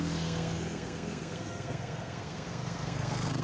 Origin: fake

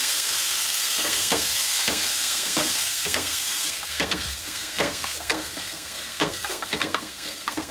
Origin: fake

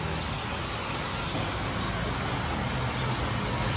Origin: real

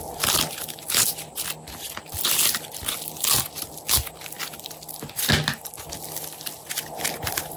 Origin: real